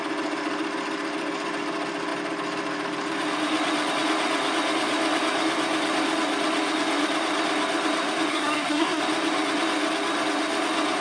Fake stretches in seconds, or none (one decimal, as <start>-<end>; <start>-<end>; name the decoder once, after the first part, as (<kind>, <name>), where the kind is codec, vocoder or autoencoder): 8.3-9.0 (codec, SNAC)